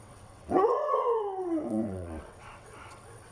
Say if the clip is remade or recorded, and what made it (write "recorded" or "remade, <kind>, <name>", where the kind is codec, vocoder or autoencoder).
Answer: remade, vocoder, WaveNeXt